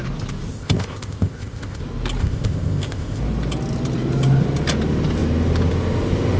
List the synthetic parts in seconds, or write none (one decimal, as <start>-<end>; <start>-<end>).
0.5-1.8; 2.2-3.2